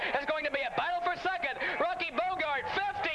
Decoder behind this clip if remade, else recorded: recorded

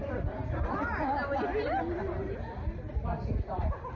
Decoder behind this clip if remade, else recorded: recorded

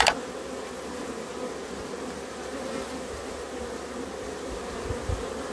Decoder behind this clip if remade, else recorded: recorded